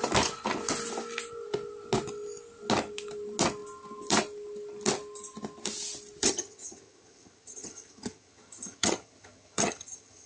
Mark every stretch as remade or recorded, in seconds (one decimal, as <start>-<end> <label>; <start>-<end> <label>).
0.0-6.2 recorded; 6.2-10.3 remade